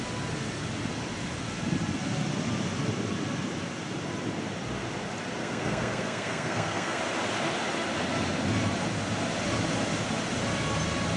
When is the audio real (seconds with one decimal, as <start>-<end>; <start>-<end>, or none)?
0.0-5.4; 7.0-11.2